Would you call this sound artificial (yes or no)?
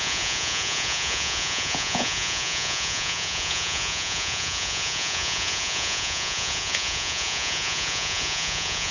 yes